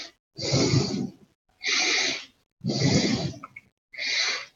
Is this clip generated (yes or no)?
no